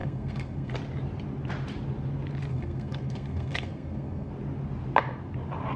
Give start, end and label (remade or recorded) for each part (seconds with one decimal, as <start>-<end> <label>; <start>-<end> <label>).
0.0-0.7 remade; 0.7-2.5 recorded; 2.5-4.3 remade; 4.3-5.8 recorded